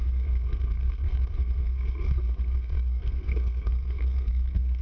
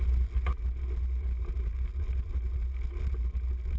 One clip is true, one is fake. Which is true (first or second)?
second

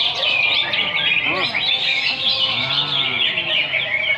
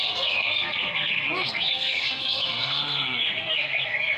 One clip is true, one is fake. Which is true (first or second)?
first